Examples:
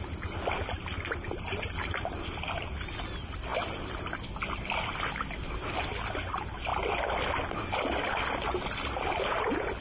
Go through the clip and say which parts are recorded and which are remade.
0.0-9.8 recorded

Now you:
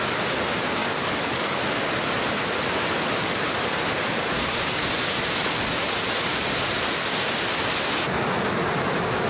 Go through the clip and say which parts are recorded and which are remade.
0.0-0.8 recorded; 0.8-1.6 remade; 1.6-9.3 recorded

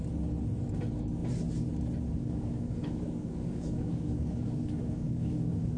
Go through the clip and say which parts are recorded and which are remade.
0.0-2.2 recorded; 2.2-5.8 remade

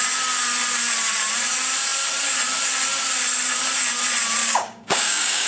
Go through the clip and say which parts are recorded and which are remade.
0.0-4.4 recorded; 4.4-5.5 remade